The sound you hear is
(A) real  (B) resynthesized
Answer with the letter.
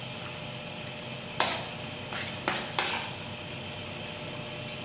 A